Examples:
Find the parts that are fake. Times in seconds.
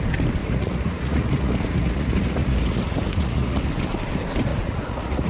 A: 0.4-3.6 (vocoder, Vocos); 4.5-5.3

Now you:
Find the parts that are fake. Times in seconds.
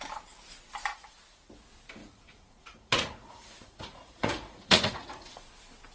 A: 0.9-1.5 (vocoder, Vocos); 2.0-5.5